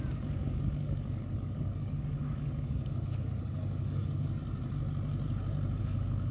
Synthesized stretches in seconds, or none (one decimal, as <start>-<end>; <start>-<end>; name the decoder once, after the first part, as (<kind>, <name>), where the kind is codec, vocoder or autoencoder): 0.0-4.4 (codec, DAC); 5.8-6.3